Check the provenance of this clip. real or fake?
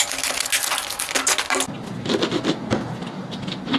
real